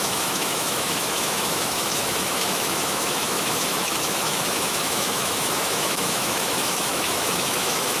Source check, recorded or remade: remade